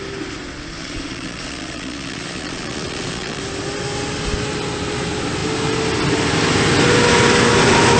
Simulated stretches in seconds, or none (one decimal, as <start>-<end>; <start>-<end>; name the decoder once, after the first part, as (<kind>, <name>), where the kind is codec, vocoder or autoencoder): 0.8-3.4 (vocoder, Vocos)